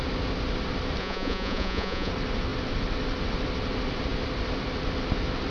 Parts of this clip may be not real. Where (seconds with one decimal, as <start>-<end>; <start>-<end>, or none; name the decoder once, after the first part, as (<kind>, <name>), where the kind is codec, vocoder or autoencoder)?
1.0-2.1 (vocoder, Vocos)